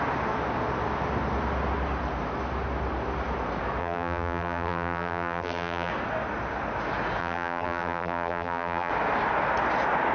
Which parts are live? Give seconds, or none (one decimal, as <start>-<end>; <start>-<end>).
0.0-3.8; 5.9-7.2; 8.9-10.1

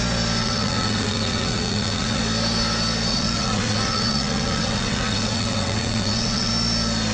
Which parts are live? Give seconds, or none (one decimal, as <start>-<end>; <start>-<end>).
0.0-0.4; 2.2-3.1; 6.5-7.1